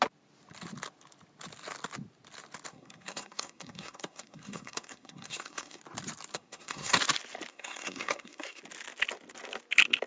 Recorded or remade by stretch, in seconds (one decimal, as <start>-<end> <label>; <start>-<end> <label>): 0.0-2.7 recorded; 2.7-5.8 remade; 5.8-6.3 recorded; 6.3-7.0 remade; 7.0-7.5 recorded; 7.5-8.6 remade; 8.6-10.1 recorded